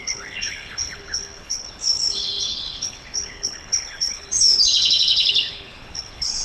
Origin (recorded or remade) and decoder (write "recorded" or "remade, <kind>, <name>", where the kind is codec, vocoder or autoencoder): remade, codec, HILCodec